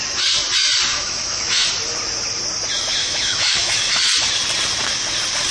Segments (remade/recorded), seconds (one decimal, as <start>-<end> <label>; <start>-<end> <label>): 0.0-0.9 recorded; 0.9-1.7 remade; 1.7-3.0 recorded; 3.0-4.0 remade; 4.0-5.5 recorded